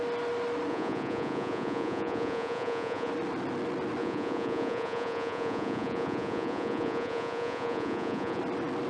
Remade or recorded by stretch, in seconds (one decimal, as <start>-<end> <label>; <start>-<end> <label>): 0.0-0.7 recorded; 0.7-3.1 remade; 3.1-4.0 recorded; 4.0-8.4 remade; 8.4-8.9 recorded